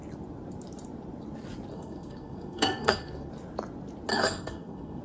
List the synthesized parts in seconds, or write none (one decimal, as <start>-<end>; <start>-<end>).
1.7-3.3; 4.1-5.0

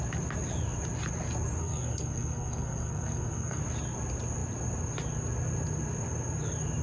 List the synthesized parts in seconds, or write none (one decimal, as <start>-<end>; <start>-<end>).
1.6-3.6